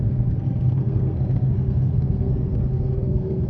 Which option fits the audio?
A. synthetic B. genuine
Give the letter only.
A